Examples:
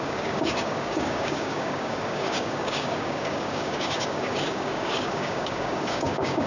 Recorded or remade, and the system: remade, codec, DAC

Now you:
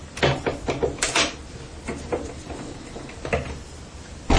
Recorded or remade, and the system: remade, vocoder, BigVGAN v2